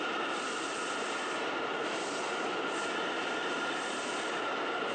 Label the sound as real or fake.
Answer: real